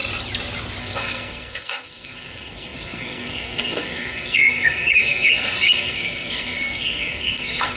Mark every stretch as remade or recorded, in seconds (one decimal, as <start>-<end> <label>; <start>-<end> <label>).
0.0-0.8 recorded; 0.8-7.8 remade